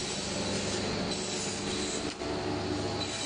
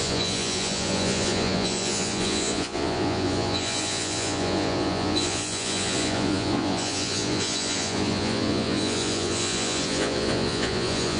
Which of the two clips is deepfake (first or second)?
second